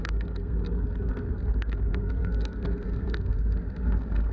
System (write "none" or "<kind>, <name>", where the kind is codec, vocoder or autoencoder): codec, SNAC